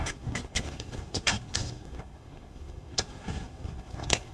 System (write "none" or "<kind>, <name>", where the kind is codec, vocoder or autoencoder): codec, SNAC